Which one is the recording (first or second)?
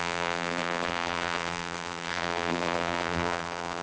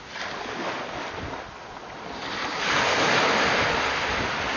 second